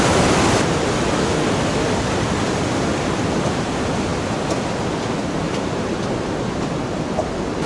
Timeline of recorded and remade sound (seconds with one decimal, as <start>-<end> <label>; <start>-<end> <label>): 0.0-7.7 recorded